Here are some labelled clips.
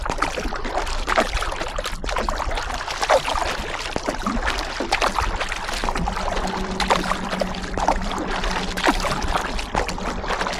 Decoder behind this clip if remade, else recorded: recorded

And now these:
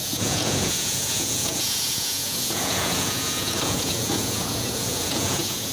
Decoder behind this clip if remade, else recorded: remade, vocoder, Vocos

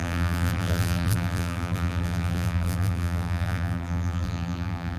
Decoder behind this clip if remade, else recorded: remade, vocoder, BigVGAN v2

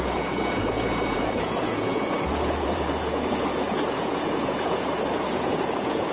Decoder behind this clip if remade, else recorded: remade, vocoder, Vocos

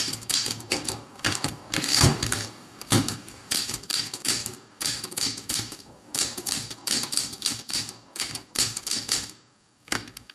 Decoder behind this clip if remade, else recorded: remade, codec, DAC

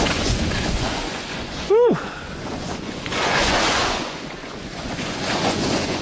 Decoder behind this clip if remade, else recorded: remade, vocoder, Vocos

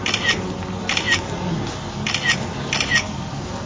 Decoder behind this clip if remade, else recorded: recorded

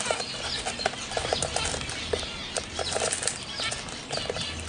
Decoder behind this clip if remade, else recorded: recorded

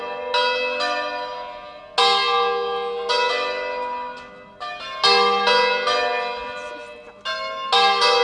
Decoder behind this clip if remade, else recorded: recorded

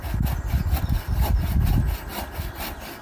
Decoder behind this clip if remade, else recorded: recorded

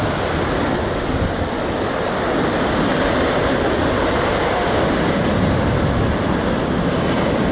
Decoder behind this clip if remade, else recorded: recorded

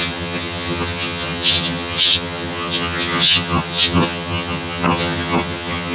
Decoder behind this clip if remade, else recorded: remade, vocoder, HiFi-GAN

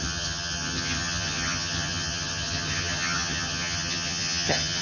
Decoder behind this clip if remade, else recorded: remade, vocoder, HiFi-GAN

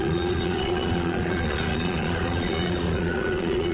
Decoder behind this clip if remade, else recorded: remade, vocoder, Vocos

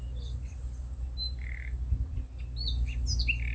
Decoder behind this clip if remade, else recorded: recorded